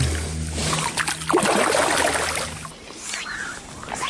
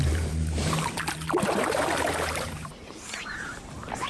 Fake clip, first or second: second